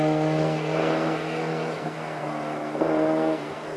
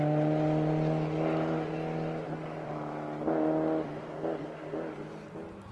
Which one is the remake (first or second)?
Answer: first